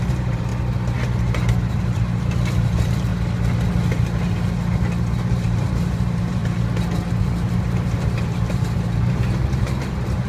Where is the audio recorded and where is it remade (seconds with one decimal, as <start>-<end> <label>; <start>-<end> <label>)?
0.0-0.5 remade; 0.5-1.7 recorded; 1.7-3.1 remade; 3.1-5.2 recorded; 5.2-6.4 remade; 6.4-7.2 recorded; 7.2-10.3 remade

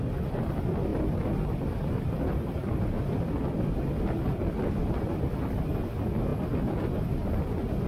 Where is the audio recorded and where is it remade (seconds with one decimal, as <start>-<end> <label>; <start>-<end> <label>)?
0.0-0.9 recorded; 0.9-5.6 remade; 5.6-6.3 recorded; 6.3-7.9 remade

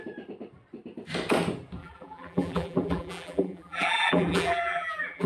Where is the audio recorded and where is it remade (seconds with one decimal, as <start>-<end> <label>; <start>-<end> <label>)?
0.0-1.8 recorded; 1.8-5.3 remade

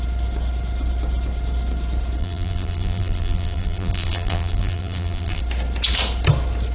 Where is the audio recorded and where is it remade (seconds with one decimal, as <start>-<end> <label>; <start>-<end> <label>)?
0.0-2.2 recorded; 2.2-5.4 remade; 5.4-6.7 recorded

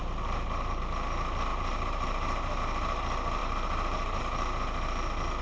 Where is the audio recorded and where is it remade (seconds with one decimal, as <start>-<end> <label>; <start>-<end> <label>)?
0.0-1.5 recorded; 1.5-2.6 remade; 2.6-3.4 recorded; 3.4-4.2 remade; 4.2-5.4 recorded